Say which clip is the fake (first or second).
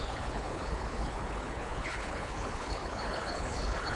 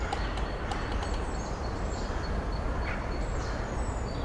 first